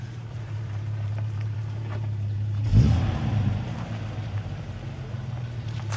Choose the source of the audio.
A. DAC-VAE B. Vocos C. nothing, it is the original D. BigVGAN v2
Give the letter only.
D